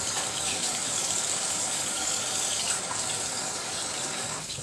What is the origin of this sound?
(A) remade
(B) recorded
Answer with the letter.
A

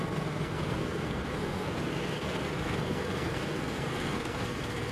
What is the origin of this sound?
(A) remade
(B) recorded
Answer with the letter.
A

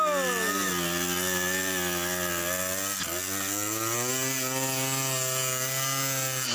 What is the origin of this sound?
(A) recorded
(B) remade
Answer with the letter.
A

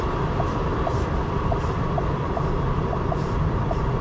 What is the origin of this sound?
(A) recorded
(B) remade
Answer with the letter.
B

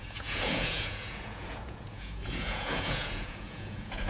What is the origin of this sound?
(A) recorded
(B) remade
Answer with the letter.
B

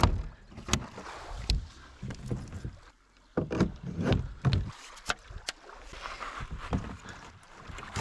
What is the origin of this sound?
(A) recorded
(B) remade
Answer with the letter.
A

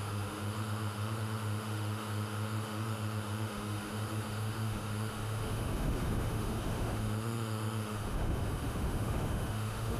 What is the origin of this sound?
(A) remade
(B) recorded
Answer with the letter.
A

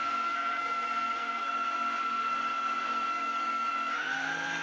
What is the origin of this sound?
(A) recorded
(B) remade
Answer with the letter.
B